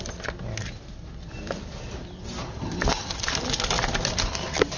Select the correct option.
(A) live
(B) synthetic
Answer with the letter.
A